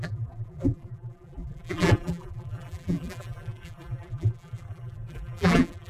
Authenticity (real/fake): fake